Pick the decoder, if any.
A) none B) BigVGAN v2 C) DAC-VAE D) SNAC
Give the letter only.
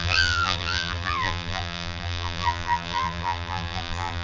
B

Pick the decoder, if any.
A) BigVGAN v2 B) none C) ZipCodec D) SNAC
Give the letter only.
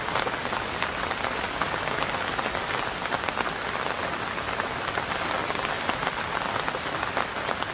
B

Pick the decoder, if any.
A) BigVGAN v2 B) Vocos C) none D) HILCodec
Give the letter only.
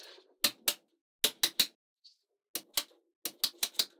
C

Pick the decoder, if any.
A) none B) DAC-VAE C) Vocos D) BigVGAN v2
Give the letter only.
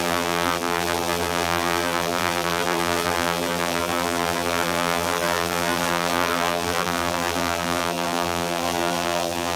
D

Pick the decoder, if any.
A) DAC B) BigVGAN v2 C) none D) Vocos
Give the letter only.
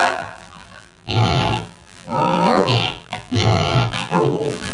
B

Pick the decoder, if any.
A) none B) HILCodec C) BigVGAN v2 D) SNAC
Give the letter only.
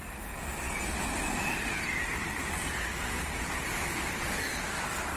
A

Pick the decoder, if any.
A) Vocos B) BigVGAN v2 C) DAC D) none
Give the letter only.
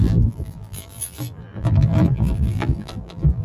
B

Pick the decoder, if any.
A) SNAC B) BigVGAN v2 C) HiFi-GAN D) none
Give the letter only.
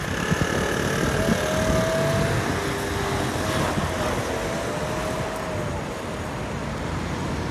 D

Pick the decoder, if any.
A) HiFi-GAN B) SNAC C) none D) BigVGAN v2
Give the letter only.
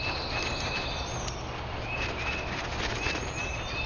C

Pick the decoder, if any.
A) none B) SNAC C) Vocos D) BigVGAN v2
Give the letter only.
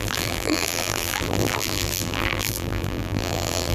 D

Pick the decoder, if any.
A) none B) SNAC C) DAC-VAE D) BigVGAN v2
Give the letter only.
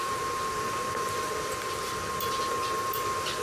D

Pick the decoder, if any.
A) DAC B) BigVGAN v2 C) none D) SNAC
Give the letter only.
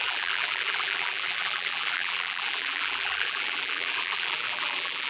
B